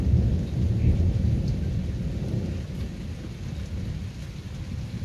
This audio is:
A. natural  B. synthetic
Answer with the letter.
A